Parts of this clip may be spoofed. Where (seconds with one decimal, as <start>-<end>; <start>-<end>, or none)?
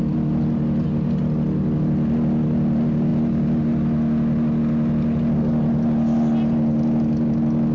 none